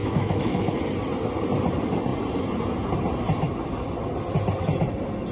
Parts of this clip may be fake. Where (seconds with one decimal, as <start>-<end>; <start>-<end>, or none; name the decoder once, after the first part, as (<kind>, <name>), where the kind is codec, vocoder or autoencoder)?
0.0-0.8 (autoencoder, DAC-VAE)

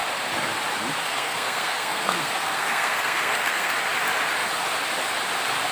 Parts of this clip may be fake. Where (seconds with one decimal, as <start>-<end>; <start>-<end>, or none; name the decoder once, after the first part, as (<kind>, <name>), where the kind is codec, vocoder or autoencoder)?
1.1-3.7 (codec, SNAC)

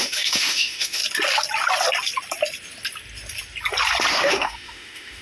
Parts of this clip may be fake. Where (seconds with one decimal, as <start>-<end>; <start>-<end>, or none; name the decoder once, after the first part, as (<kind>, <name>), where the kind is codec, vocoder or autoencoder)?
0.0-1.0 (autoencoder, DAC-VAE); 4.1-5.2

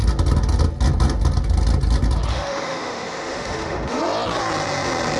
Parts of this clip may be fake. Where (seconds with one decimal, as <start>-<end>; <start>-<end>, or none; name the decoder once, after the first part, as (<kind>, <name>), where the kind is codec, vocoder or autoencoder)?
2.3-4.0 (autoencoder, DAC-VAE)